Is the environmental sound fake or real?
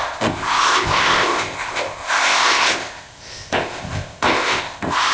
fake